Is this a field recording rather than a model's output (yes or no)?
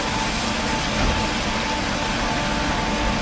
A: yes